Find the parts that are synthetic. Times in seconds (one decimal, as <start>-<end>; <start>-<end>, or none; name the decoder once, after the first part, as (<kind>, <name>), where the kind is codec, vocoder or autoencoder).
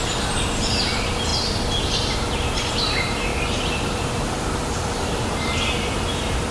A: 0.0-1.3 (vocoder, BigVGAN v2); 2.8-6.5